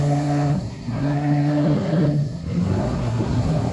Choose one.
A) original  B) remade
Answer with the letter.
B